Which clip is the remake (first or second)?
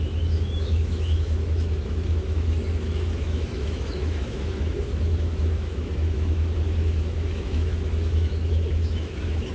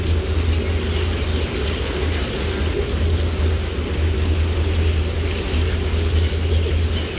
first